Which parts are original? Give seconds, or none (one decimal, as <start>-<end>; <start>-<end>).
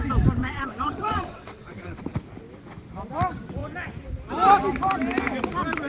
0.0-0.4; 2.0-5.9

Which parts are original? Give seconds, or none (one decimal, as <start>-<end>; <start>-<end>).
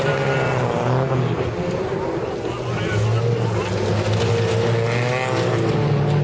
0.0-6.2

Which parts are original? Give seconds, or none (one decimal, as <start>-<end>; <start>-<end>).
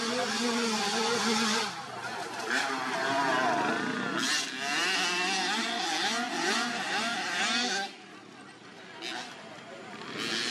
0.0-10.5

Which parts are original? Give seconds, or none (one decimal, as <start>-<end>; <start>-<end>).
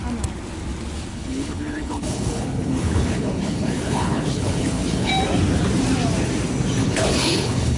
0.0-1.1; 5.1-6.8